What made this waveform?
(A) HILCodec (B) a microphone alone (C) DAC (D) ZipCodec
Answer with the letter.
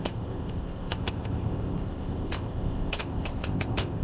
D